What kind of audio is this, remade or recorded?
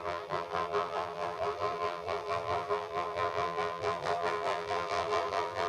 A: remade